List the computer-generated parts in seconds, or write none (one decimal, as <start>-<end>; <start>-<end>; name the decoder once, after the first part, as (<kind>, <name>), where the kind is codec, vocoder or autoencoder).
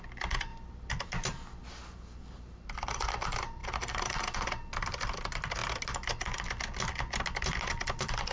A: none